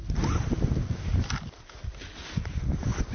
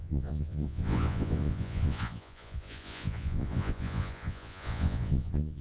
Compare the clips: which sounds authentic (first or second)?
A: first